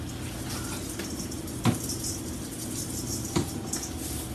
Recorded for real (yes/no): yes